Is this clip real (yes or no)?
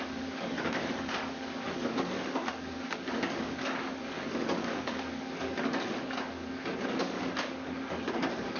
no